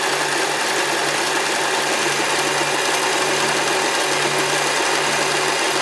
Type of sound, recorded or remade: recorded